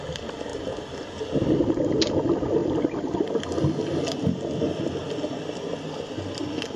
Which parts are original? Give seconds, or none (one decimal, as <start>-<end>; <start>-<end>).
0.0-6.8